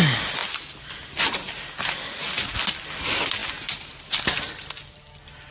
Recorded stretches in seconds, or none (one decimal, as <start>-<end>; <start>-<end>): 0.0-5.5